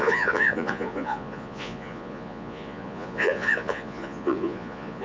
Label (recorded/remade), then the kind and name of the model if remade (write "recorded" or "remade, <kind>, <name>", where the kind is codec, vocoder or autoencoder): remade, vocoder, Vocos